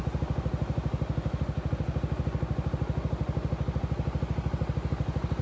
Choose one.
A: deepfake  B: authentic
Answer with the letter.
B